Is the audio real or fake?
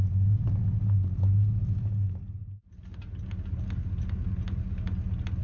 real